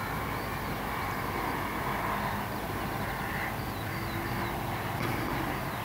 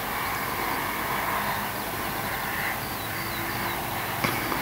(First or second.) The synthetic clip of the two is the first